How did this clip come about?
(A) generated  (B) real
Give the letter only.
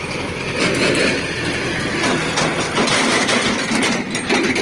B